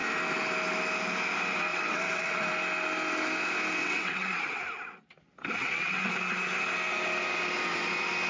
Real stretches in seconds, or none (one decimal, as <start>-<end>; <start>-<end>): 0.0-1.7; 2.4-3.8; 4.6-5.6; 6.1-8.3